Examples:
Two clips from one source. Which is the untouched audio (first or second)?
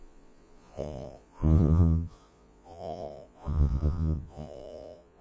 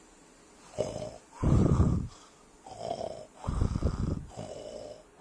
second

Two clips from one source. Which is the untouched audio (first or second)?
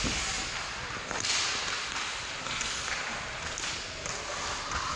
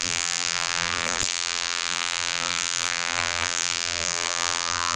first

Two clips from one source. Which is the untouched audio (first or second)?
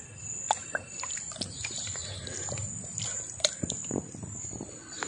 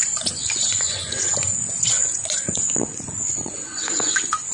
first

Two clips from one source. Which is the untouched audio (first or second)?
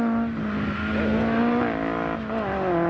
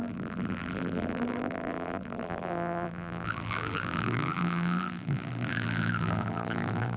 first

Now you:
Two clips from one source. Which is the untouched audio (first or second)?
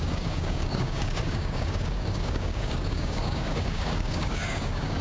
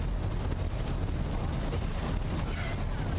second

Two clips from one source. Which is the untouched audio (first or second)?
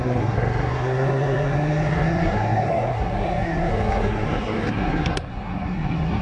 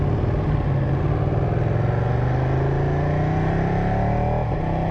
second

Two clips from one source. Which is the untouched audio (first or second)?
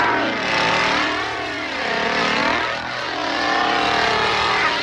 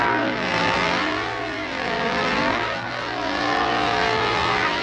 first